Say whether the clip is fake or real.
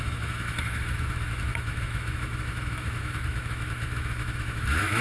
fake